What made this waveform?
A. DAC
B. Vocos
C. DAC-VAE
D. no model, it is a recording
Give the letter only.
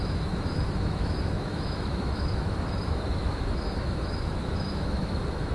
C